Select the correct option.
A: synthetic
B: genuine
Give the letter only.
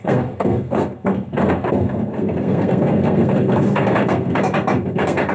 A